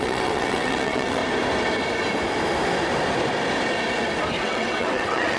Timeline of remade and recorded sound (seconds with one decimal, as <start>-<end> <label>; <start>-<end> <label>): 0.0-1.2 remade; 1.2-4.4 recorded; 4.4-5.4 remade